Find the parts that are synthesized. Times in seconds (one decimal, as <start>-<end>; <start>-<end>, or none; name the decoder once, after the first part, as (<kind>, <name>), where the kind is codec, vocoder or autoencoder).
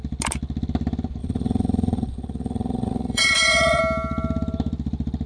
1.2-3.8 (vocoder, Vocos)